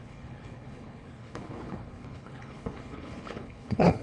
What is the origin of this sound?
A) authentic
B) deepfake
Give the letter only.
B